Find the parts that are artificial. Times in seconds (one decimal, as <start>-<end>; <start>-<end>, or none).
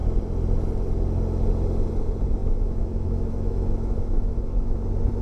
2.4-4.8